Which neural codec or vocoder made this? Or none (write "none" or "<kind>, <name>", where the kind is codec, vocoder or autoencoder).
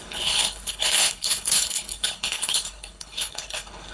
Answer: codec, HILCodec